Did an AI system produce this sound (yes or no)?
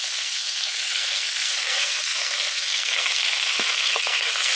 yes